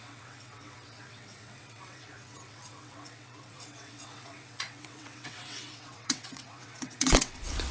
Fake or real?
fake